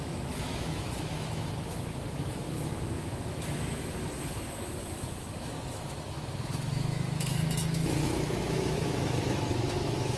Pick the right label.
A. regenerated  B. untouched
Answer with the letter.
A